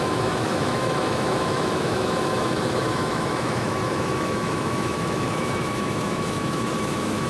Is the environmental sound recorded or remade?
remade